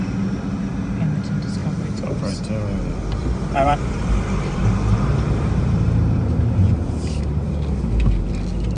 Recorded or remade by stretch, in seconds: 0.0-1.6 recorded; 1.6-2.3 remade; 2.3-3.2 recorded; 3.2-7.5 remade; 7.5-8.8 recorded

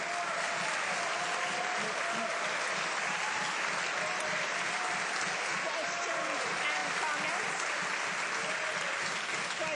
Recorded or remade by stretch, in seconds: 0.0-9.7 recorded

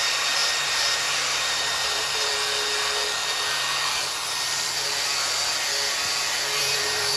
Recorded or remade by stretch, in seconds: 0.0-2.3 remade; 2.3-6.6 recorded; 6.6-7.2 remade

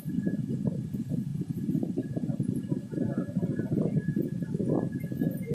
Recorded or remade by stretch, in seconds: 0.0-1.3 recorded; 1.3-2.6 remade; 2.6-5.5 recorded

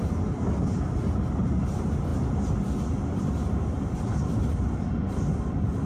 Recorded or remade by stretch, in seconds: 0.0-5.9 recorded

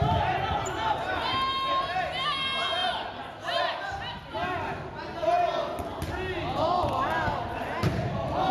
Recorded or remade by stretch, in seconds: 0.0-8.5 recorded

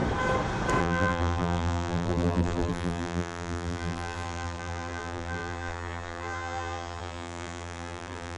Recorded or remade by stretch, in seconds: 0.0-0.8 recorded; 0.8-8.4 remade